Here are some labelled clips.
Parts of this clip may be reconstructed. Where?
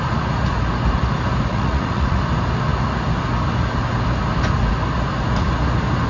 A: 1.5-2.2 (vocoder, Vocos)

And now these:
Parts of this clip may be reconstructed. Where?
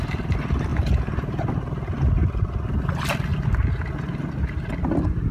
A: 0.7-1.5 (vocoder, BigVGAN v2)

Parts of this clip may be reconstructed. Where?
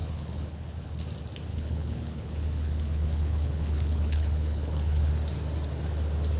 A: 0.0-1.0 (codec, HILCodec); 1.5-5.1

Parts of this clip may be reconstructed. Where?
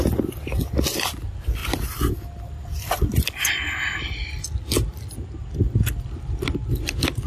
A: none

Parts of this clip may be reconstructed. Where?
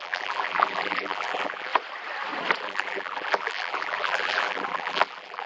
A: 0.0-1.7 (vocoder, BigVGAN v2); 2.6-5.5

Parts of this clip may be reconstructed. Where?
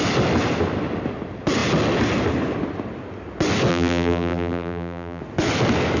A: 3.7-5.2 (vocoder, BigVGAN v2)